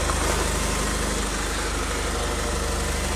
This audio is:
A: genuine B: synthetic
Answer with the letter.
A